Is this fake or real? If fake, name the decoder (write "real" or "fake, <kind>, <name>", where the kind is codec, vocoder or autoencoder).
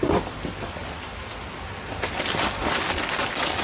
fake, vocoder, BigVGAN v2